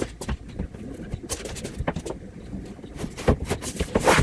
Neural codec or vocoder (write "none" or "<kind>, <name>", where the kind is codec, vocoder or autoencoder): none